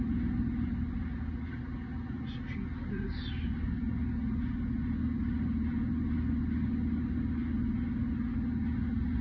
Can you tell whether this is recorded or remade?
recorded